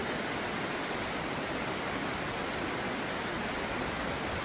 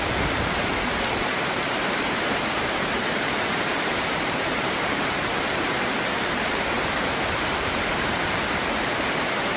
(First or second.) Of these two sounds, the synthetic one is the second